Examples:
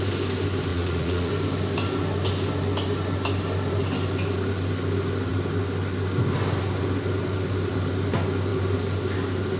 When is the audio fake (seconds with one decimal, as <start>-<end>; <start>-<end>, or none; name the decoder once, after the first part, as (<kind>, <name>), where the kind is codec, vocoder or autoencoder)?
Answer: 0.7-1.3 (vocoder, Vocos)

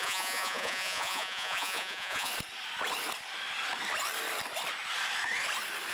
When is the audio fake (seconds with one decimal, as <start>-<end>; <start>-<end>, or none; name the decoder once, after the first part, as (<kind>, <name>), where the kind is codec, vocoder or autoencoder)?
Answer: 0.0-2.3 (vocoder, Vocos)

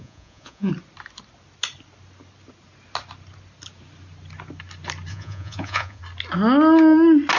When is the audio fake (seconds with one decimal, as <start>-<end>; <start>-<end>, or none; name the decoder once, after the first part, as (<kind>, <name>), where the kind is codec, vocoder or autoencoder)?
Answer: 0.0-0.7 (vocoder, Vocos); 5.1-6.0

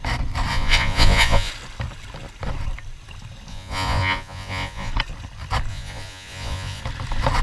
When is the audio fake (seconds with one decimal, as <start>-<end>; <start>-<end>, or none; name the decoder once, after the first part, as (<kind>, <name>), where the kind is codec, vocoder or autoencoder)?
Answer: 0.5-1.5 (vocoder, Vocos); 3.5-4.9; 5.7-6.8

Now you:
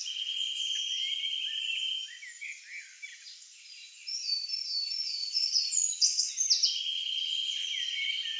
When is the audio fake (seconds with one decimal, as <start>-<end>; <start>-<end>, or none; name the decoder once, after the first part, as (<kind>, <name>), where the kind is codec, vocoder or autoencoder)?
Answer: 5.2-6.2 (vocoder, Vocos)